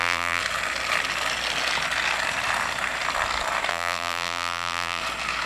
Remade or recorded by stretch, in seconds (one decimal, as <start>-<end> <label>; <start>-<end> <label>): 0.0-0.4 remade; 0.4-3.7 recorded; 3.7-5.0 remade; 5.0-5.5 recorded